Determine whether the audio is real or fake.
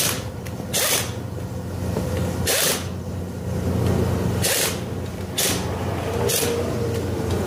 real